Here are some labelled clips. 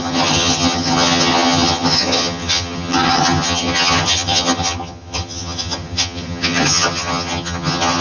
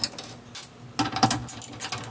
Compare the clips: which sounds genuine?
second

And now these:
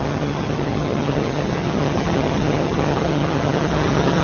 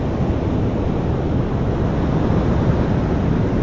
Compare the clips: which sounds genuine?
second